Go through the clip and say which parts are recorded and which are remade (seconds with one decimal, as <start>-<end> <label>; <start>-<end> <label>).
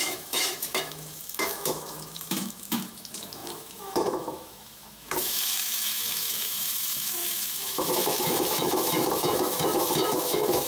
0.0-10.7 remade